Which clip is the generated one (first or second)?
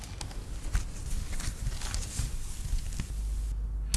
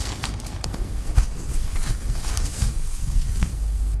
second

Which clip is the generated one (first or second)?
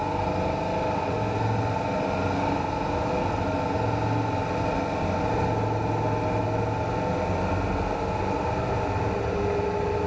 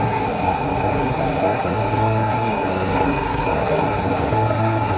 second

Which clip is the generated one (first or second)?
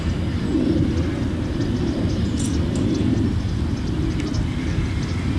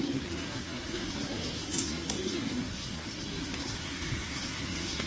second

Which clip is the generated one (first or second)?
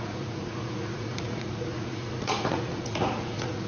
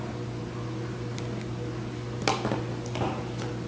first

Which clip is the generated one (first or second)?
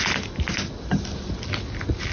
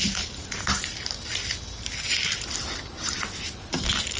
second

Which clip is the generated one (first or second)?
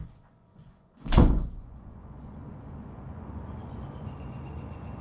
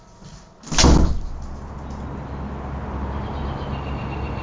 first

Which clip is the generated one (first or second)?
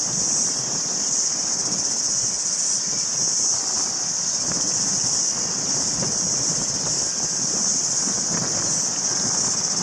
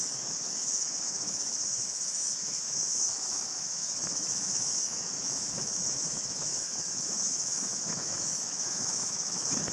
second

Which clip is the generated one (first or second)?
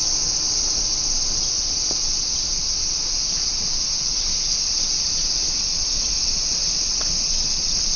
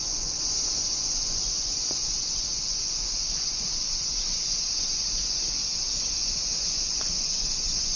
second